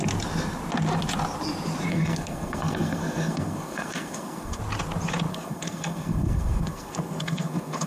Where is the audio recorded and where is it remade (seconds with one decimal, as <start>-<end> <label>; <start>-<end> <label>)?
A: 0.0-1.9 recorded; 1.9-4.6 remade; 4.6-5.3 recorded; 5.3-7.9 remade